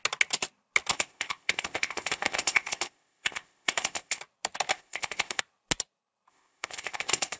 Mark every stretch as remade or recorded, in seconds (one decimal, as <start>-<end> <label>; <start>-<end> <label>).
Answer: 0.0-0.9 recorded; 0.9-4.2 remade; 4.2-4.7 recorded; 4.7-5.4 remade; 5.4-6.3 recorded; 6.3-7.4 remade